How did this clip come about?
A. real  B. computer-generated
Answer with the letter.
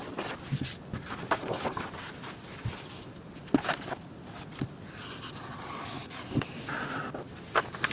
A